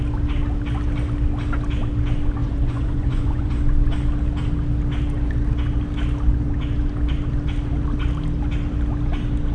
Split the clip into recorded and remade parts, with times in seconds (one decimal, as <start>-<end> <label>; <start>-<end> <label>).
0.0-2.4 recorded; 2.4-3.5 remade; 3.5-9.5 recorded